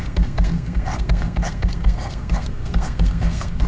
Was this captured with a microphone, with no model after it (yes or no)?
no